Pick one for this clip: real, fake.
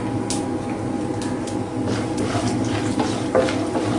real